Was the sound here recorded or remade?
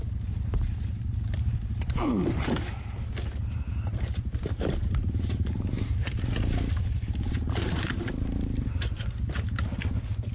remade